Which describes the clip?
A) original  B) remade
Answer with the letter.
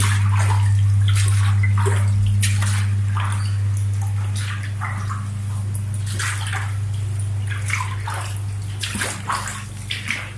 A